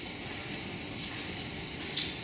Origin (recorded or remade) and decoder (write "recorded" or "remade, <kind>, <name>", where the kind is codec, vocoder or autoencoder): recorded